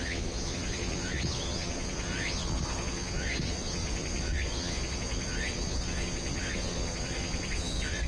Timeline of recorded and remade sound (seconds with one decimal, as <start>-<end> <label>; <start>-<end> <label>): 0.0-8.1 remade